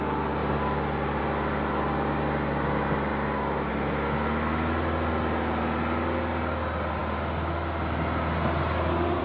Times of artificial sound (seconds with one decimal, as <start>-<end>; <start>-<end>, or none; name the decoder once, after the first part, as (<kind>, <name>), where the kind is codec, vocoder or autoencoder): none